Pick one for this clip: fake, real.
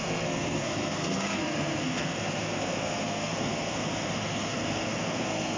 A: fake